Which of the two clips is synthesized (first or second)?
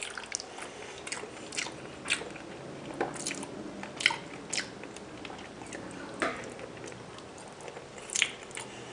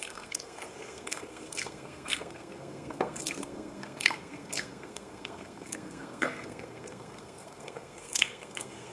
second